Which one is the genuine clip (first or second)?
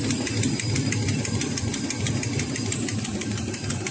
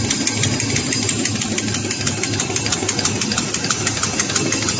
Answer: second